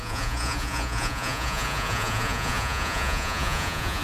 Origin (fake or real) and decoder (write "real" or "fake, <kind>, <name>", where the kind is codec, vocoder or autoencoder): fake, vocoder, Vocos